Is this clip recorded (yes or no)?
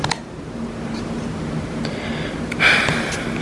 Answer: yes